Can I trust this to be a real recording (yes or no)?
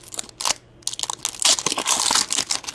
yes